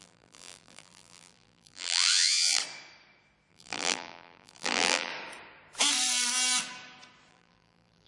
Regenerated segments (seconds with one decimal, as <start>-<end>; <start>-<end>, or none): 0.0-2.6; 3.5-5.1; 7.3-8.1